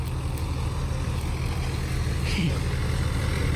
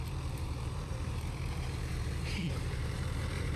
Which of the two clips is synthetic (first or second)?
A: second